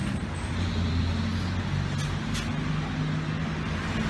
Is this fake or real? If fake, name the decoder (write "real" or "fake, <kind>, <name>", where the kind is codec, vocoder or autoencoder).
real